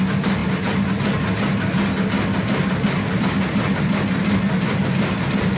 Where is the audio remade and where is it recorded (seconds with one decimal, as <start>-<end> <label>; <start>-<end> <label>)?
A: 0.0-0.4 remade; 0.4-3.8 recorded; 3.8-5.6 remade